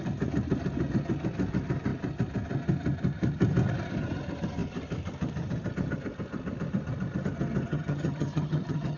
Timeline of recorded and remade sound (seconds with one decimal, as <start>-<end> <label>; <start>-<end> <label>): 0.0-7.7 recorded; 7.7-9.0 remade